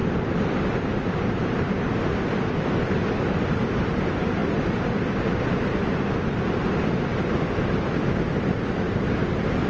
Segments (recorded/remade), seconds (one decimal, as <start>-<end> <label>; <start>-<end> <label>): 0.0-9.7 recorded